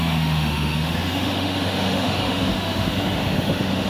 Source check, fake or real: fake